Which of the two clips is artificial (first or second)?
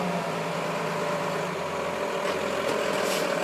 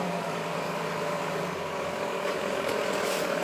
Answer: second